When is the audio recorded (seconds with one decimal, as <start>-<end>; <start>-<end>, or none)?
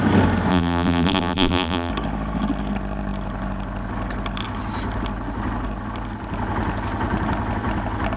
0.0-0.5; 1.9-8.2